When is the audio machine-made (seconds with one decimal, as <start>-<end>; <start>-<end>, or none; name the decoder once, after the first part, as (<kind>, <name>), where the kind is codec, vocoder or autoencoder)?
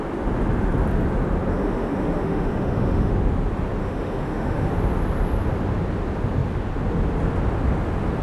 1.5-3.1 (autoencoder, DAC-VAE); 3.8-4.7